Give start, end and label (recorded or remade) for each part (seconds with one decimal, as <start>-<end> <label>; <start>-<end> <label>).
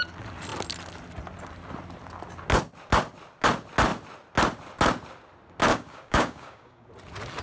0.0-5.7 recorded; 5.7-6.9 remade; 6.9-7.4 recorded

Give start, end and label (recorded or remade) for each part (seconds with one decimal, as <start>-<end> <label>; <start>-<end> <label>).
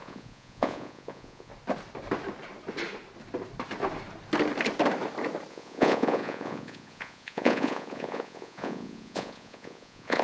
0.0-1.5 remade; 1.5-5.5 recorded; 5.5-10.2 remade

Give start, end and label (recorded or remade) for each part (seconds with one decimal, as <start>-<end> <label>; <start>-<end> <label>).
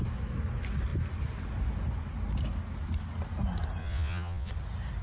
0.0-3.8 recorded; 3.8-4.5 remade; 4.5-5.0 recorded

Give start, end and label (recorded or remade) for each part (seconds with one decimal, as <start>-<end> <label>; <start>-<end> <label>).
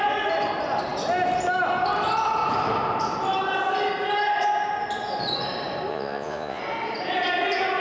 0.0-5.9 recorded; 5.9-6.6 remade; 6.6-7.8 recorded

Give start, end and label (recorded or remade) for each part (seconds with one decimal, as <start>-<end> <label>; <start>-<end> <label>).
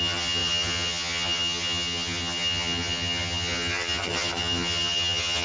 0.0-5.4 remade